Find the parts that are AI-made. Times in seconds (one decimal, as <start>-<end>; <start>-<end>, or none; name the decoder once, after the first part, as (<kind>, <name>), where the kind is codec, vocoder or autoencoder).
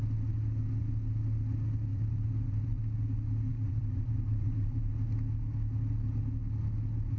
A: 1.9-2.8 (vocoder, BigVGAN v2); 3.5-4.9